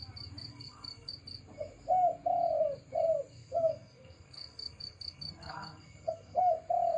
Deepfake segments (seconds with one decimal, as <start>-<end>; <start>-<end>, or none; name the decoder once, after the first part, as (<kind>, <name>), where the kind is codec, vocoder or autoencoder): 0.5-1.1 (codec, SNAC); 3.4-6.4